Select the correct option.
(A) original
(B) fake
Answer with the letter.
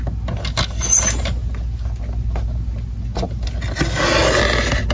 A